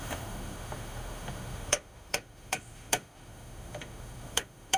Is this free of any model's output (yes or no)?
no